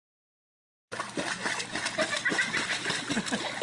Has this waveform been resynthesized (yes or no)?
no